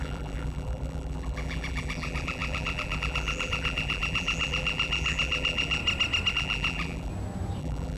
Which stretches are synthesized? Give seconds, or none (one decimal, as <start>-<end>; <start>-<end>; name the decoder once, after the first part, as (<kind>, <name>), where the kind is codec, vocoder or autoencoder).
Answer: 0.0-5.8 (vocoder, BigVGAN v2); 6.3-7.1; 7.6-8.0